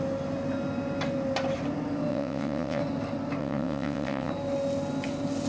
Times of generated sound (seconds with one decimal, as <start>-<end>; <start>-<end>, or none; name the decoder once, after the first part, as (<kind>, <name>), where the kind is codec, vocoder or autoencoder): 2.1-2.8 (vocoder, WaveNeXt); 3.4-4.3